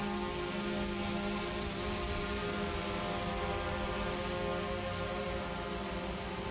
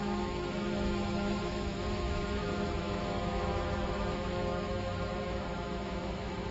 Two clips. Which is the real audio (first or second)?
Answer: first